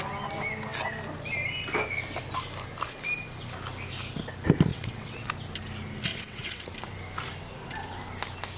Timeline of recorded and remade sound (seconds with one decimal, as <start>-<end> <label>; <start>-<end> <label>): 0.0-4.7 recorded; 4.7-5.3 remade; 5.3-6.1 recorded; 6.1-6.6 remade; 6.6-8.6 recorded